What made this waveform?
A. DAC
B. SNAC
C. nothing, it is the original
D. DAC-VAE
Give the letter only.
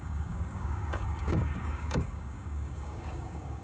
A